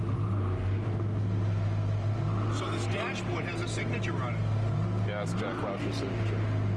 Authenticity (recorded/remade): recorded